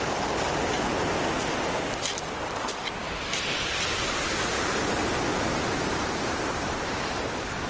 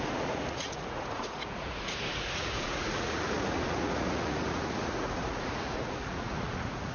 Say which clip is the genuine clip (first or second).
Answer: first